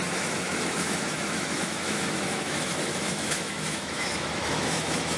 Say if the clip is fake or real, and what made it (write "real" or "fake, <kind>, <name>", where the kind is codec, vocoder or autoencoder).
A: fake, autoencoder, DAC-VAE